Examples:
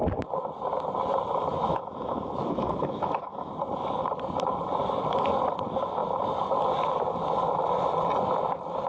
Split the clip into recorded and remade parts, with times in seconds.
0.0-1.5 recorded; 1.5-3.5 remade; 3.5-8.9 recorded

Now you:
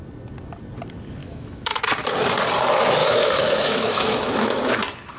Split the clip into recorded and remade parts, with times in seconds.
0.0-1.2 recorded; 1.2-1.8 remade; 1.8-3.0 recorded; 3.0-4.6 remade; 4.6-5.2 recorded

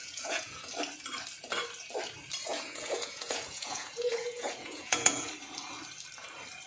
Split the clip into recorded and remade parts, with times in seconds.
0.0-0.6 remade; 0.6-2.5 recorded; 2.5-5.3 remade; 5.3-6.7 recorded

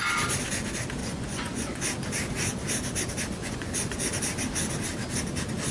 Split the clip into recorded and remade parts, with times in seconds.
0.0-1.0 recorded; 1.0-1.8 remade; 1.8-3.4 recorded; 3.4-4.0 remade; 4.0-5.7 recorded

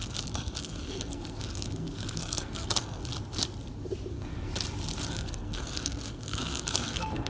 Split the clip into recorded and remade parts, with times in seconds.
0.0-3.0 remade; 3.0-4.1 recorded; 4.1-4.5 remade; 4.5-5.1 recorded; 5.1-7.3 remade

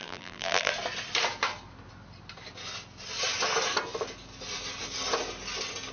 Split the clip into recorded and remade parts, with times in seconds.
0.0-0.7 remade; 0.7-5.9 recorded